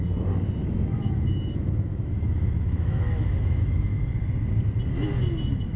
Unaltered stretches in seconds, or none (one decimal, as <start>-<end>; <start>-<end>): 0.0-0.6; 4.1-5.8